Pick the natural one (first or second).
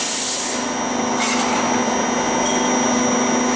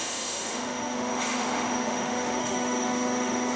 first